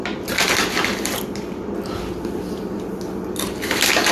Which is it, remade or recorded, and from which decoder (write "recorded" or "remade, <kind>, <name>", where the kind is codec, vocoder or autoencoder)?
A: recorded